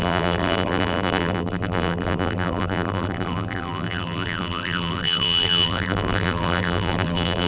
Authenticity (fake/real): fake